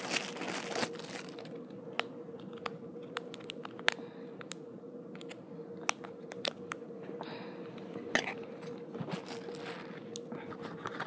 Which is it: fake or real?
real